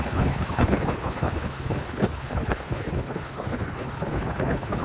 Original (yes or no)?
no